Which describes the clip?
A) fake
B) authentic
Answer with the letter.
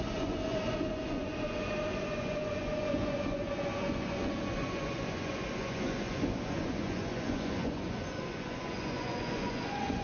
A